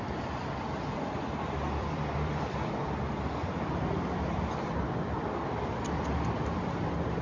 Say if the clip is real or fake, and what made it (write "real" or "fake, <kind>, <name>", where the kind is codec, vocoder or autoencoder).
fake, vocoder, BigVGAN v2